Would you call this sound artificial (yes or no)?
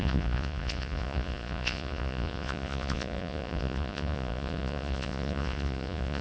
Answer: yes